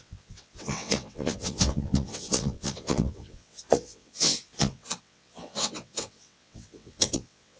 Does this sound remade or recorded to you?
remade